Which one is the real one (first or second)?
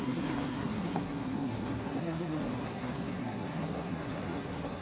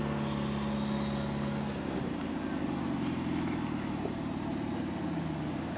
second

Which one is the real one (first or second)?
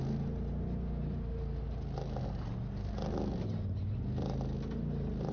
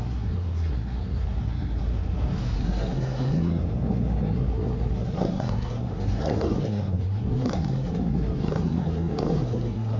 first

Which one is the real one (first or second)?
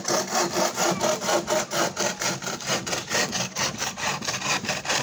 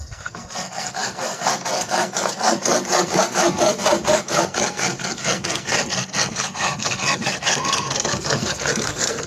first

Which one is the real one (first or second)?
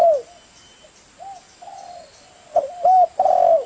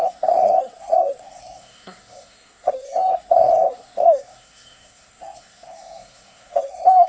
first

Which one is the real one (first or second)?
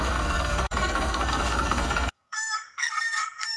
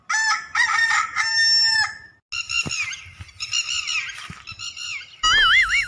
second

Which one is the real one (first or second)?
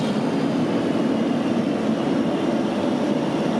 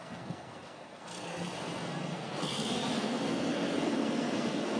first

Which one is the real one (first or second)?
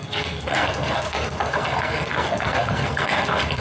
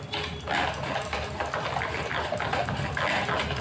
second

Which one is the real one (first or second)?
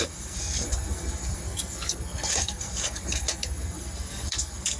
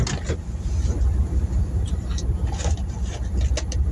second